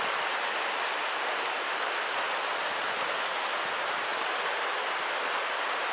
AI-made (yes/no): no